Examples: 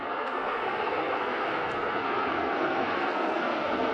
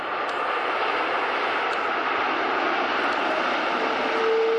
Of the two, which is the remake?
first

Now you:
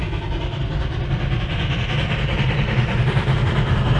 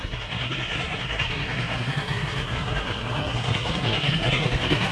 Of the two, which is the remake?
second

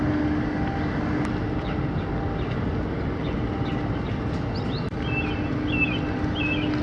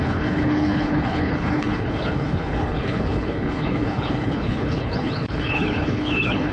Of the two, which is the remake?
second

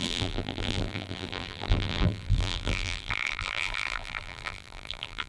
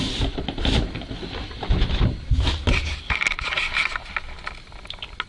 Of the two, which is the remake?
first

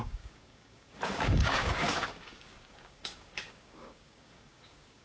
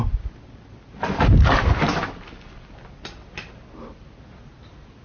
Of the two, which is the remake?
first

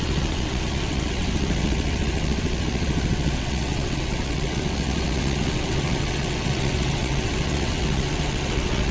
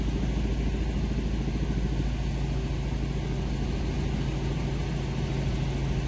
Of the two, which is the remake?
first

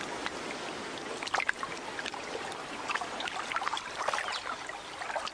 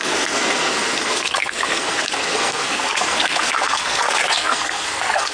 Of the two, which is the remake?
second